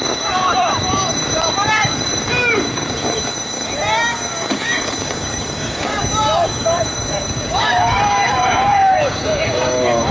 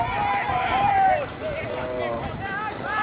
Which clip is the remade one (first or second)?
first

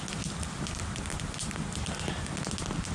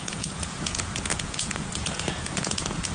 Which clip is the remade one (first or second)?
second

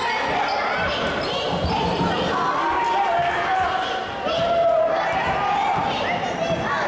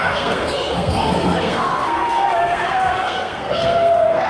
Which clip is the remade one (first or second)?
second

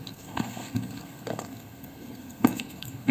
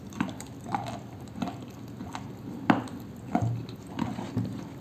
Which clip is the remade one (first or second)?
first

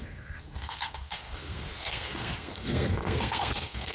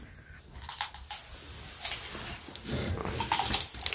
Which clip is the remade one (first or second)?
first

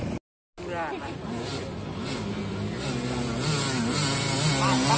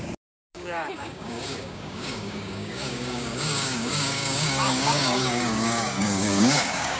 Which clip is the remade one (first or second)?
second